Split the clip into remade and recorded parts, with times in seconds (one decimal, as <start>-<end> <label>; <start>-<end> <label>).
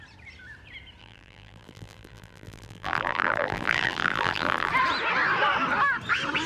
0.0-1.0 recorded; 1.0-4.7 remade; 4.7-6.5 recorded